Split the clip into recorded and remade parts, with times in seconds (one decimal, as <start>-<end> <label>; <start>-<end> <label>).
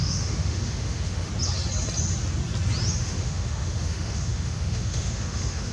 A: 0.0-1.3 remade; 1.3-3.0 recorded; 3.0-5.7 remade